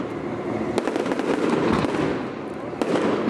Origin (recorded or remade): recorded